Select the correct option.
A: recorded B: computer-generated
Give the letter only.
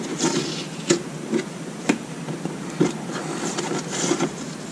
A